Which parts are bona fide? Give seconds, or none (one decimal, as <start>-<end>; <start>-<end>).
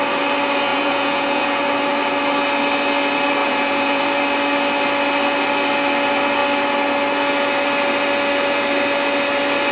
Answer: 0.0-0.7; 1.6-3.4; 4.0-9.7